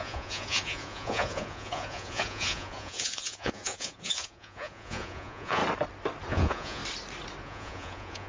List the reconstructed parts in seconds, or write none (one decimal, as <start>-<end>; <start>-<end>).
0.0-5.6; 6.3-6.8; 7.4-8.3